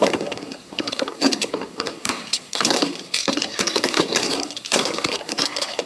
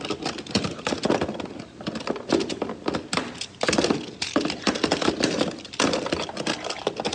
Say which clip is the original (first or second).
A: second